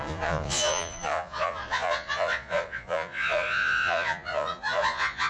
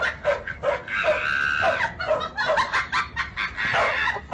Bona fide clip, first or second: second